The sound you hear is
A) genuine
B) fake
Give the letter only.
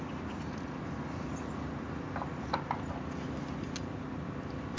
A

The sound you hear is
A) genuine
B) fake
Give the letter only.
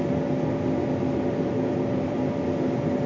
A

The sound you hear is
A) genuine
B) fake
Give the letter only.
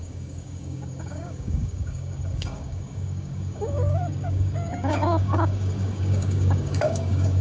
B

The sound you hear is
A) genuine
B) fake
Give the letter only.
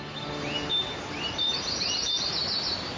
A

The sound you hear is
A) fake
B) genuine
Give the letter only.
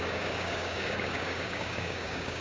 A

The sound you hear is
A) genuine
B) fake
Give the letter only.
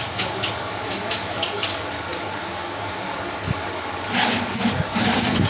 B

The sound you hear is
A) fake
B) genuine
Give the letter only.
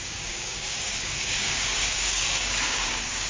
A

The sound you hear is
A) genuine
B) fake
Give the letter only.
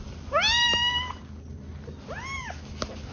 A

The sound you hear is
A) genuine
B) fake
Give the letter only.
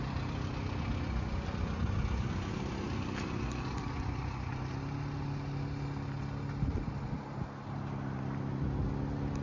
A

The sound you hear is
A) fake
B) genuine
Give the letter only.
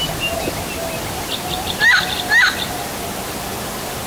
B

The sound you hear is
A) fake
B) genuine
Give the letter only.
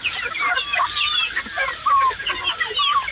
B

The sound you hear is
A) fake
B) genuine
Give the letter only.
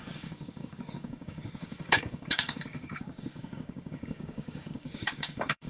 A